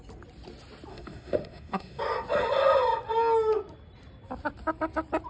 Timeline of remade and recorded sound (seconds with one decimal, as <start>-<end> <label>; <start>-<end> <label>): 0.0-0.9 recorded; 0.9-2.0 remade; 2.0-5.3 recorded